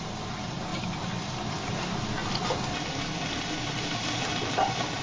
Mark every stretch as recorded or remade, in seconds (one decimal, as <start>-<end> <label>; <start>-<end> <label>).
0.0-5.0 recorded